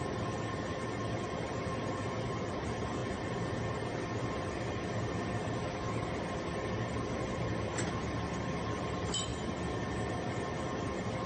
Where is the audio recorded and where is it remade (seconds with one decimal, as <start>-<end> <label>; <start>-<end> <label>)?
0.0-11.3 recorded